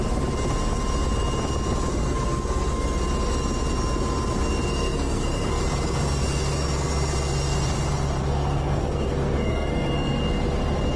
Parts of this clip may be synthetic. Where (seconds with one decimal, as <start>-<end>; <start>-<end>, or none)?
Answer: 1.9-3.0; 4.7-5.6; 8.2-10.2